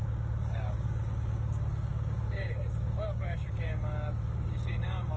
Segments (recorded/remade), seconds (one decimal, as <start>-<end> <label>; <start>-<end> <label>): 0.0-5.2 remade